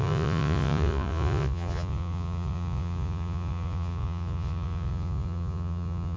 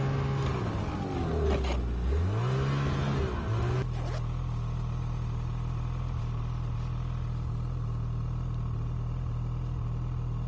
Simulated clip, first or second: first